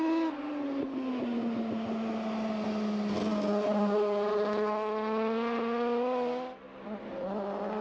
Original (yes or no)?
yes